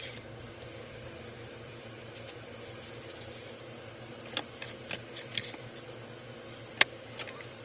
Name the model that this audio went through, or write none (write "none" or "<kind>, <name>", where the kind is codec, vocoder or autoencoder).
none